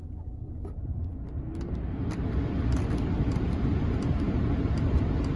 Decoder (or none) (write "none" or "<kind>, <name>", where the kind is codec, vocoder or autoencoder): none